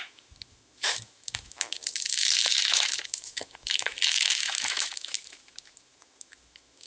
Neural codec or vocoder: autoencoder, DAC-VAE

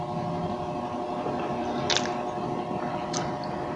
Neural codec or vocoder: none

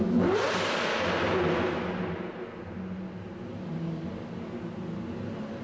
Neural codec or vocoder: none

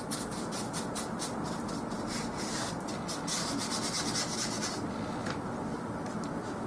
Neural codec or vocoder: none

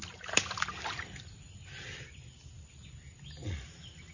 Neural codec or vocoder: none